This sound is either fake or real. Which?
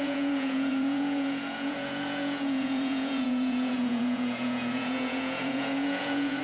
fake